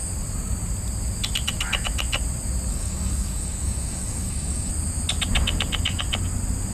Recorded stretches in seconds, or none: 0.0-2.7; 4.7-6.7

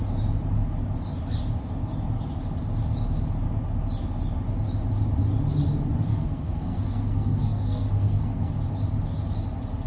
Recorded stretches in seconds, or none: 0.0-6.1; 8.5-9.9

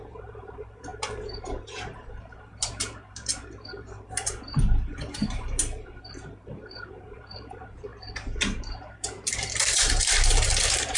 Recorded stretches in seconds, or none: none

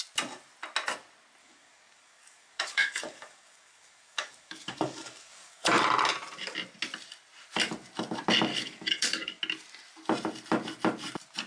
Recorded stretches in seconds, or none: 0.0-1.4; 5.7-8.5; 9.4-11.5

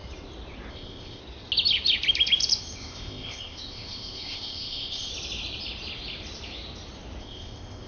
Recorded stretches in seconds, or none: 0.0-0.7; 1.2-2.6; 5.1-7.2

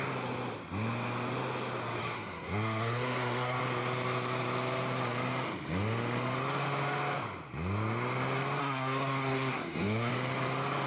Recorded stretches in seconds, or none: 0.0-2.0; 3.6-8.6; 10.1-10.9